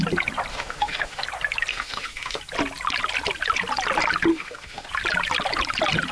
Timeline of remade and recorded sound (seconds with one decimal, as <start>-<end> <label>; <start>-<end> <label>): 0.0-0.5 recorded; 0.5-1.2 remade; 1.2-1.7 recorded; 1.7-2.4 remade; 2.4-4.3 recorded; 4.3-4.9 remade; 4.9-6.1 recorded